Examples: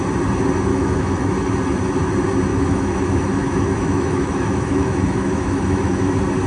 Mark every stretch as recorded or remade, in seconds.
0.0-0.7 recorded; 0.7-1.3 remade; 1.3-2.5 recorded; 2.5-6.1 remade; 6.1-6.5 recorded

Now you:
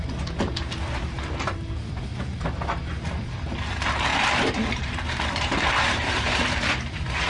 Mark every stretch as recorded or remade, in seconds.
0.0-4.1 recorded; 4.1-6.1 remade; 6.1-7.3 recorded

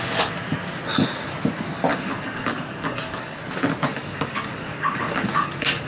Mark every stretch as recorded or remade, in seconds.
0.0-1.9 recorded; 1.9-3.4 remade; 3.4-3.9 recorded; 3.9-5.9 remade

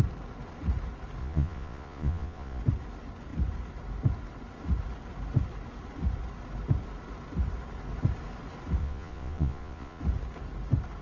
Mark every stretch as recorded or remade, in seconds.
0.0-1.2 recorded; 1.2-2.6 remade; 2.6-8.8 recorded; 8.8-10.0 remade; 10.0-11.0 recorded

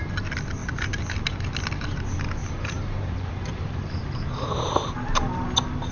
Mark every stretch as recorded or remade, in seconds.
0.0-2.4 recorded; 2.4-4.9 remade; 4.9-5.9 recorded

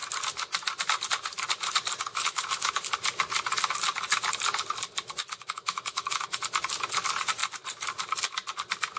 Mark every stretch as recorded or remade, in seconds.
0.0-2.1 recorded; 2.1-2.7 remade; 2.7-5.2 recorded; 5.2-6.4 remade; 6.4-9.0 recorded